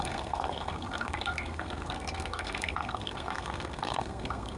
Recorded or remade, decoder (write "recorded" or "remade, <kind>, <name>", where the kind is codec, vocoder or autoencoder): remade, codec, SNAC